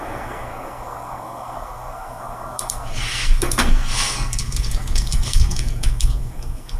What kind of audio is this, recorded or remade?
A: remade